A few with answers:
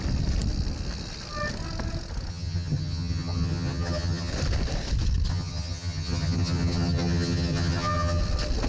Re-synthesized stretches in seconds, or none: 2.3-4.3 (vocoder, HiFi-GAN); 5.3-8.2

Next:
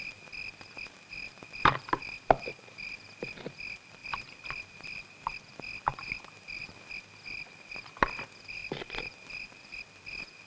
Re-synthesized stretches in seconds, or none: 4.0-5.8 (vocoder, BigVGAN v2)

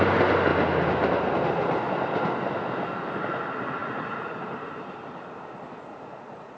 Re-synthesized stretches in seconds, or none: 3.8-4.4 (vocoder, Vocos); 5.9-6.6

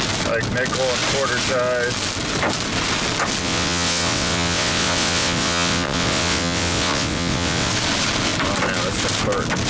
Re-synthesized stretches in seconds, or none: 3.4-7.7 (vocoder, WaveNeXt)

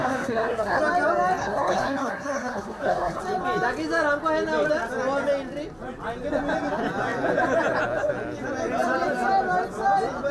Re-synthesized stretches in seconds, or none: 0.0-0.8 (codec, SNAC); 1.4-3.2

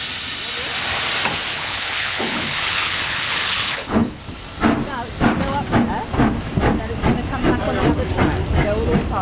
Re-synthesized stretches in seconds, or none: 1.5-4.2 (codec, HILCodec)

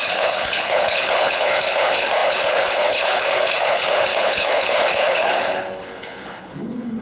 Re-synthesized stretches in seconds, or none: 0.0-7.0 (codec, HILCodec)

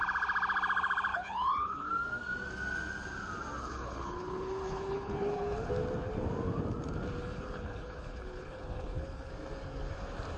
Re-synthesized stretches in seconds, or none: 1.1-1.9 (codec, HILCodec); 3.6-5.7; 7.2-9.3